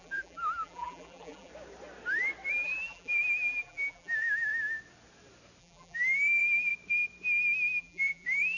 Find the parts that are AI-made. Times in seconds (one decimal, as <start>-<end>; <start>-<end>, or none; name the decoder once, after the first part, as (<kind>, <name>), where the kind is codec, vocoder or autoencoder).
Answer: 0.0-1.5 (vocoder, BigVGAN v2); 2.5-4.5; 5.6-6.7; 7.8-8.6